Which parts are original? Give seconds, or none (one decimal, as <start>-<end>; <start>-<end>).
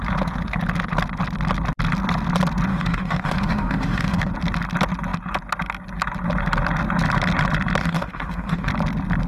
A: 0.0-2.7; 4.3-7.8; 8.7-9.3